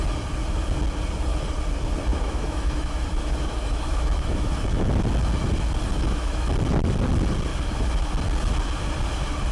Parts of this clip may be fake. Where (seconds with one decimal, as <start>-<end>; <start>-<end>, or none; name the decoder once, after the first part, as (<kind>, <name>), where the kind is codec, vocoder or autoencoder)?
2.1-4.9 (autoencoder, DAC-VAE); 5.9-6.5; 7.5-8.1